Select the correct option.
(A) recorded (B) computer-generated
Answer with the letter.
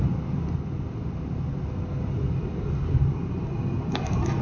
A